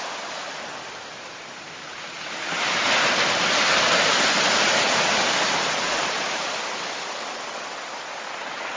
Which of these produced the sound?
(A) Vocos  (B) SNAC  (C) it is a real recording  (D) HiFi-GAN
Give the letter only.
C